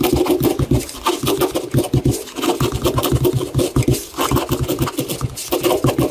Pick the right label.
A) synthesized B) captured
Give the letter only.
B